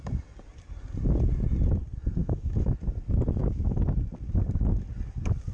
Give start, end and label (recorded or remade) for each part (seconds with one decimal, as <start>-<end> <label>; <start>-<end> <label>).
0.0-2.2 recorded; 2.2-2.8 remade; 2.8-3.4 recorded; 3.4-3.9 remade; 3.9-5.5 recorded